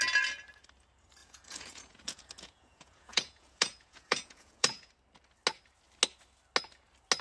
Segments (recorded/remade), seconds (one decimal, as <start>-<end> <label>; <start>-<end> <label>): 0.0-1.2 recorded; 1.2-4.9 remade; 4.9-7.2 recorded